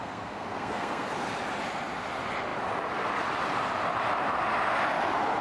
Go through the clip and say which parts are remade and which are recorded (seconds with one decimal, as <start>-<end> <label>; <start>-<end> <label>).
0.0-1.1 remade; 1.1-5.4 recorded